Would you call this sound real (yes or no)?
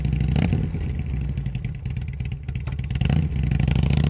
yes